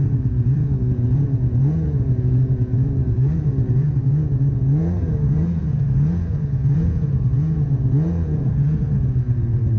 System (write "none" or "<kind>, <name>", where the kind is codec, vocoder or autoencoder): vocoder, Vocos